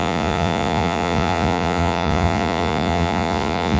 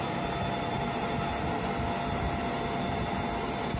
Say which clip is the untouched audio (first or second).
second